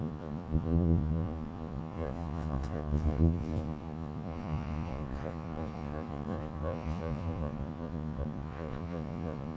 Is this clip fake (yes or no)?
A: yes